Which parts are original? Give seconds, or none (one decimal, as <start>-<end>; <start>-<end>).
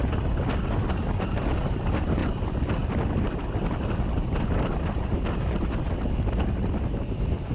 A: 0.0-7.5